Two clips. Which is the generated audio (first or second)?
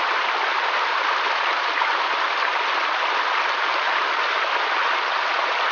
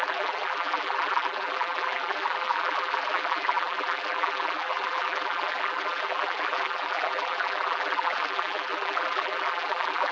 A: second